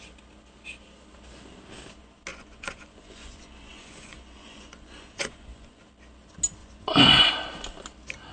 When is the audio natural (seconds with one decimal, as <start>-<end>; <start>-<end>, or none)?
0.0-2.3; 5.8-6.6; 7.3-8.3